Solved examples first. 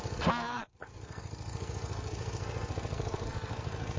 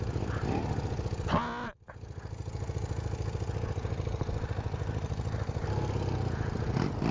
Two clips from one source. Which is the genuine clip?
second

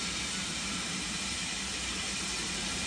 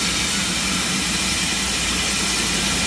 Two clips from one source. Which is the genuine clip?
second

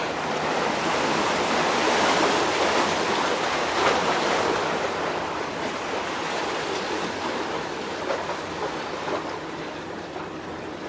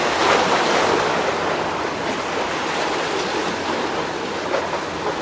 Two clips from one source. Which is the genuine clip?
second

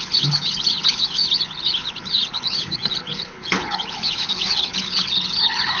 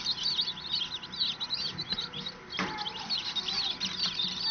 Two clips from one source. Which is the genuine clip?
second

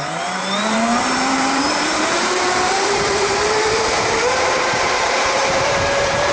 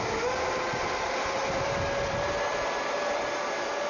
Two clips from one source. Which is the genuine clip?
second